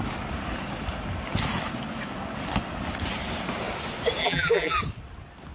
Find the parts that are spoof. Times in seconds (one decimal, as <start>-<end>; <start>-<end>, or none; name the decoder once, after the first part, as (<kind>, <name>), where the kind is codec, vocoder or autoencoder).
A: 4.2-4.8 (vocoder, BigVGAN v2)

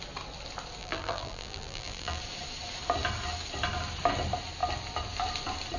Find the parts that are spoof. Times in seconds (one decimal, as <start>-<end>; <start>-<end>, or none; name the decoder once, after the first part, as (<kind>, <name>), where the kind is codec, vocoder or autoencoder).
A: 0.8-2.2 (vocoder, BigVGAN v2)

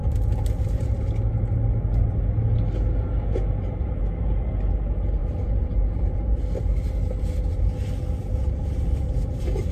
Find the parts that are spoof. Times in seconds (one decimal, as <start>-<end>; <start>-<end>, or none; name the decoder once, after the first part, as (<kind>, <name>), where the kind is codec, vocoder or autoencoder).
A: 5.2-6.4 (vocoder, BigVGAN v2)

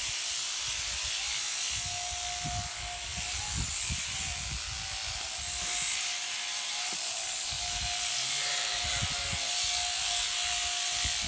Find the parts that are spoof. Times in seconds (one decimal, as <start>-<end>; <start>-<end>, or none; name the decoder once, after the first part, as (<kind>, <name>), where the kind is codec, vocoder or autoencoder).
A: none